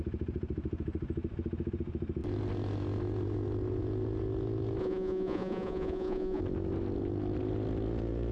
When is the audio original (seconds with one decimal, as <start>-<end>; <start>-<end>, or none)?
0.0-4.8; 6.4-8.3